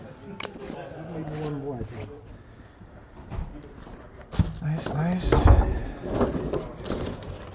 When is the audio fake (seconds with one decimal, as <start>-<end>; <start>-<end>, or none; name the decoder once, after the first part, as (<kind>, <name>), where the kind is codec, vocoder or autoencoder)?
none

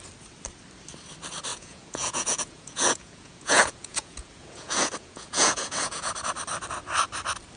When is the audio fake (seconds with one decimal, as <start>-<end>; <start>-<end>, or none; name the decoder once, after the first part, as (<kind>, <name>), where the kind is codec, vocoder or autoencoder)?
1.5-6.1 (vocoder, Vocos)

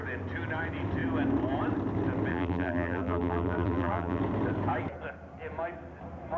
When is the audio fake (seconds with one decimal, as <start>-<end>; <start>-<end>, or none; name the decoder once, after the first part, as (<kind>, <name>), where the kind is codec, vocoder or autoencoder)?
2.3-4.2 (vocoder, BigVGAN v2)